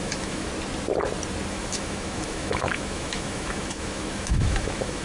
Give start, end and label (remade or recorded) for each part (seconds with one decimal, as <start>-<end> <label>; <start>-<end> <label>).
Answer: 0.0-0.5 remade; 0.5-1.5 recorded; 1.5-5.0 remade